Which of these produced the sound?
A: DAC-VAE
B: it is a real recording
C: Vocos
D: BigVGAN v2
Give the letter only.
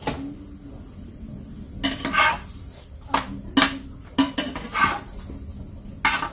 B